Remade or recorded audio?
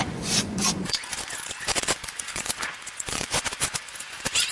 remade